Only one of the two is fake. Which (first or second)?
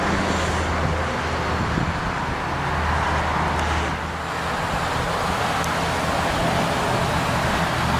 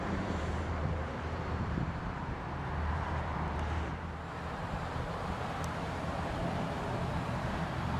second